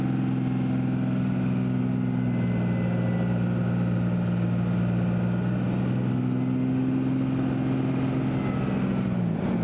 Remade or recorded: recorded